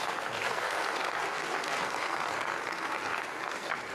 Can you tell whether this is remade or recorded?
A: remade